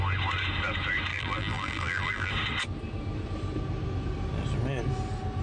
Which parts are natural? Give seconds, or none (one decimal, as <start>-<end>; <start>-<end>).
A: 0.0-1.1; 2.3-5.4